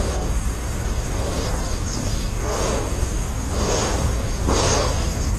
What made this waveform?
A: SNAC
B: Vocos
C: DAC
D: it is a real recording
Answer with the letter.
C